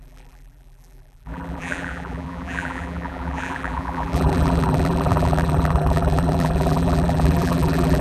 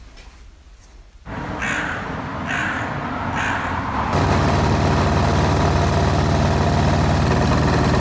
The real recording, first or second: second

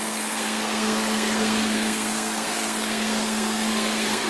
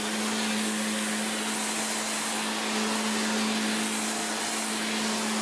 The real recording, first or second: second